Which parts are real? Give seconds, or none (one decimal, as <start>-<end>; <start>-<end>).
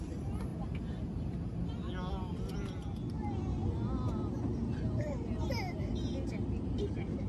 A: 0.5-4.7; 5.9-6.5